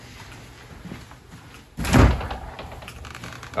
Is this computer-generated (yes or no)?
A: no